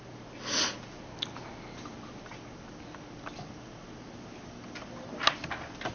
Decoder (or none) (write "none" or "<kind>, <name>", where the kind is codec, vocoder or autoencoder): none